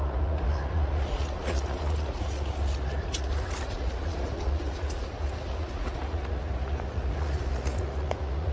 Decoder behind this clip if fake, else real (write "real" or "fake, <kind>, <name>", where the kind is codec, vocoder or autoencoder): fake, vocoder, Vocos